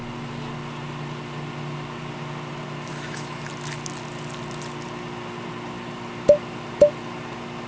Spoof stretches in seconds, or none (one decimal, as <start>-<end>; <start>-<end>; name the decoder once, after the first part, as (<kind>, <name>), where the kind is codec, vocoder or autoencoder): 2.9-3.5 (autoencoder, DAC-VAE)